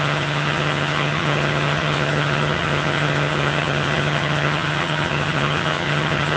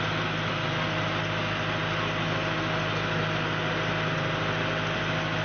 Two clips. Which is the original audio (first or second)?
second